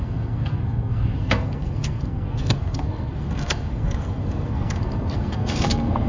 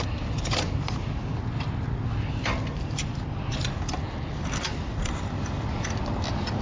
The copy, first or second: first